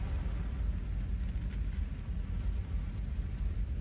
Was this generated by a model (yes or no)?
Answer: no